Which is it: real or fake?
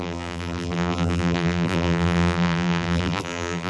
fake